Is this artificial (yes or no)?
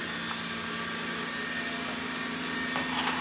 no